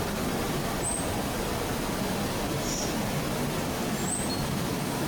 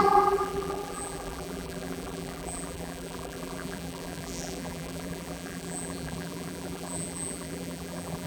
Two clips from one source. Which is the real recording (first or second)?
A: first